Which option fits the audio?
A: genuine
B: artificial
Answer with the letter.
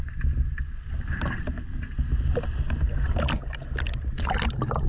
A